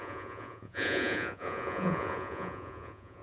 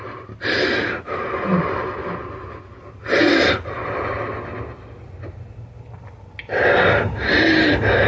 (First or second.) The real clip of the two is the second